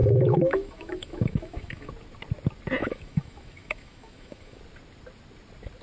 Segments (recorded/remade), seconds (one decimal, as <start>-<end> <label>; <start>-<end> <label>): 0.0-1.9 remade; 1.9-2.8 recorded; 2.8-4.6 remade; 4.6-5.8 recorded